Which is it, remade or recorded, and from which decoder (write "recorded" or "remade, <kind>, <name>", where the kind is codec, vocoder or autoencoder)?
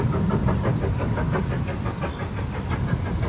recorded